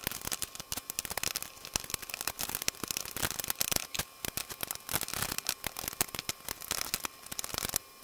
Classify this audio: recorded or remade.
recorded